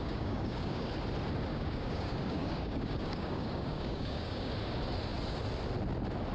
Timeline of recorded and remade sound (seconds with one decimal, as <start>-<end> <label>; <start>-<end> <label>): 0.0-0.9 remade; 0.9-1.5 recorded; 1.5-4.5 remade; 4.5-6.3 recorded